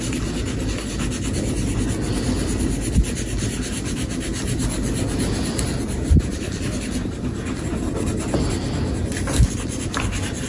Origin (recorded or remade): recorded